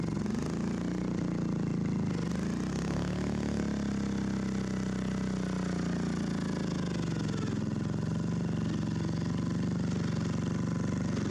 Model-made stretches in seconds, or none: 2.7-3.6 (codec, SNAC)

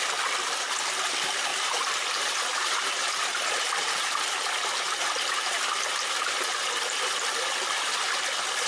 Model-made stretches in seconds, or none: 1.5-5.7 (vocoder, BigVGAN v2)

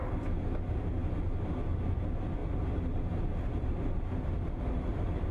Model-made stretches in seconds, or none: 0.0-1.0 (vocoder, BigVGAN v2); 1.9-2.4; 4.6-5.3